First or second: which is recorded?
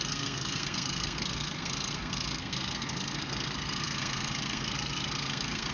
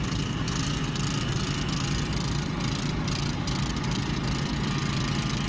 second